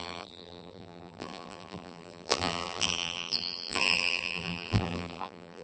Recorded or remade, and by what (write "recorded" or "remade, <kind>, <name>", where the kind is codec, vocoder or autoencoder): remade, vocoder, BigVGAN v2